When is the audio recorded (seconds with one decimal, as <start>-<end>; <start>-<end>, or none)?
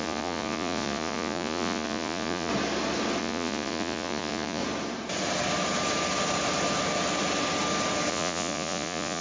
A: 2.5-3.2; 4.6-8.1